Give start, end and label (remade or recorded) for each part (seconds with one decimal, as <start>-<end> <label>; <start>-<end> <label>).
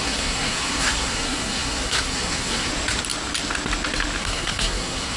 0.0-2.7 remade; 2.7-4.2 recorded; 4.2-5.2 remade